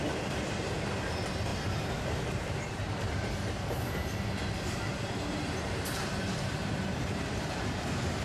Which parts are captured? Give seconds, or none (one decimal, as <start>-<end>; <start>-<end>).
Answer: 1.5-2.0